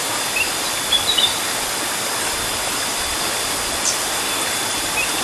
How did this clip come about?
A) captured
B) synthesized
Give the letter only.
A